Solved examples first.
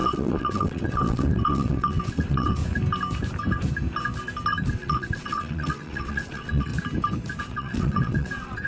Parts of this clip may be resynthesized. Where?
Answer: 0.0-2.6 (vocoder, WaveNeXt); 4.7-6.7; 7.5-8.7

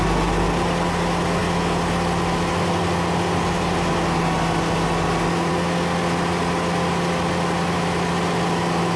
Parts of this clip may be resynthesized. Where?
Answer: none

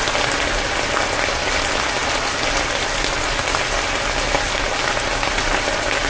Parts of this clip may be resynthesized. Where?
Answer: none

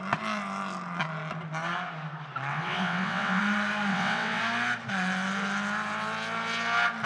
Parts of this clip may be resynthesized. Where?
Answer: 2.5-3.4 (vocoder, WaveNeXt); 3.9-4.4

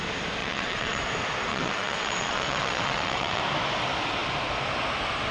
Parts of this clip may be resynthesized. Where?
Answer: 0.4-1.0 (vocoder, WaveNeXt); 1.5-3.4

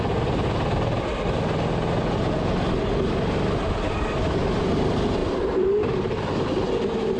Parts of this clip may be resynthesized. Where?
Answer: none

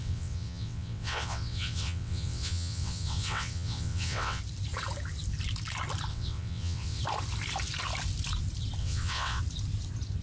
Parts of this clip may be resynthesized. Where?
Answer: 0.0-4.4 (vocoder, WaveNeXt); 6.1-7.0; 8.8-9.4